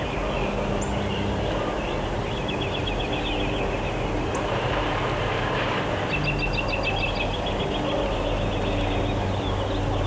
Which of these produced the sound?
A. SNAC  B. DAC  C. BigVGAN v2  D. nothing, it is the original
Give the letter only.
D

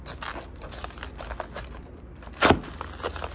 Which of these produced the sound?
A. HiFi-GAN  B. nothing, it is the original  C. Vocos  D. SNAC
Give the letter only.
B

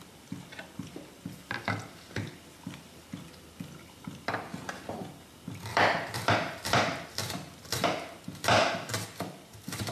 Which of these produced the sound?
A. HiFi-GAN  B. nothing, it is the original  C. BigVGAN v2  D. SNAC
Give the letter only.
C